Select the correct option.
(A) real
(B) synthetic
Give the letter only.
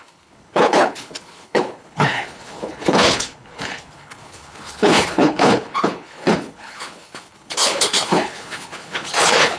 B